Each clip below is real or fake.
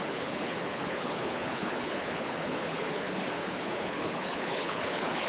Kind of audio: fake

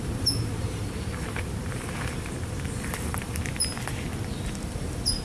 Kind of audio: fake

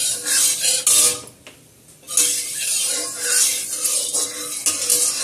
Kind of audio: real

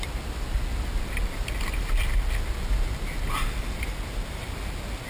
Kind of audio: real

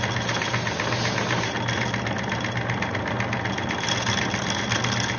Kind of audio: real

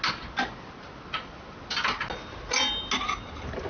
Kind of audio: real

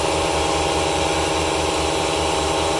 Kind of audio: fake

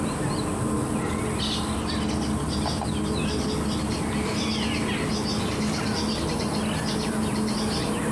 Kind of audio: real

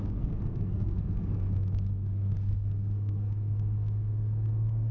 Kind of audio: fake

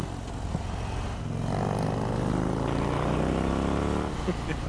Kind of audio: real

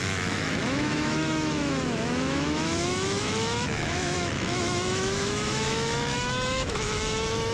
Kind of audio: fake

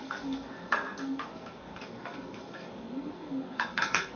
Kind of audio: fake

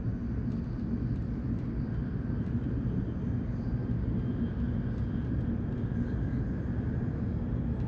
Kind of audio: real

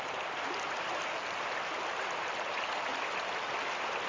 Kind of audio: real